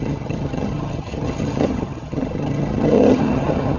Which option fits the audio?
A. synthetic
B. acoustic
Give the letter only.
A